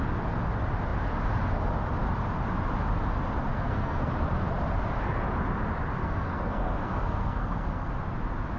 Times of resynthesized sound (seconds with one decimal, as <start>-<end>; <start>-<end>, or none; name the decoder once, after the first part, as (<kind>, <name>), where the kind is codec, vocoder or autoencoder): 3.5-4.1 (codec, SNAC); 6.0-7.9